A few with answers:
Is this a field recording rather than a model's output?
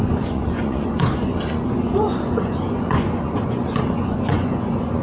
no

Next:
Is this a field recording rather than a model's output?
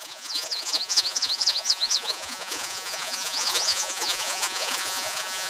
no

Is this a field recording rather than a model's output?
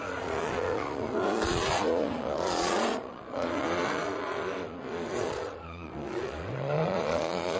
no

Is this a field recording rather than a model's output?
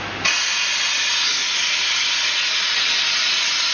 yes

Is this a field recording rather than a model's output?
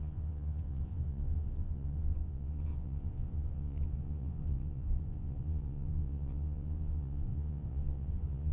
no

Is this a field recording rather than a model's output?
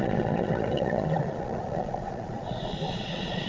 no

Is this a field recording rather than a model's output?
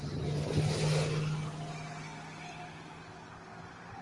yes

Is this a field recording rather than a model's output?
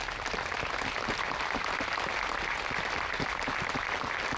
yes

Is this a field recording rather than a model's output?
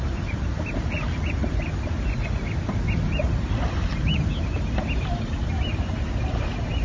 yes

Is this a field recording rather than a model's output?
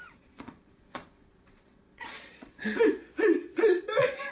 no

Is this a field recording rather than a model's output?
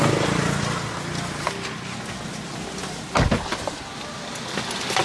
yes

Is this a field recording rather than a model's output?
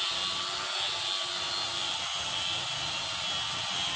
yes